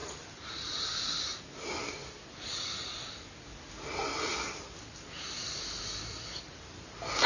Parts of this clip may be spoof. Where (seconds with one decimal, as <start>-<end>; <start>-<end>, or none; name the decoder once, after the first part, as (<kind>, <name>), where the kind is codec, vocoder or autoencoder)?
none